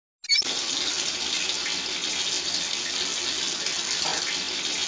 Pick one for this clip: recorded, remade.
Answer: recorded